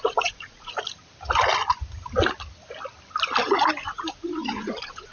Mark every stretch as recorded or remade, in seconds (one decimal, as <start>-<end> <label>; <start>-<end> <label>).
0.0-0.7 remade; 0.7-3.8 recorded; 3.8-5.1 remade